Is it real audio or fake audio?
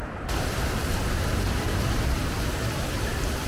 fake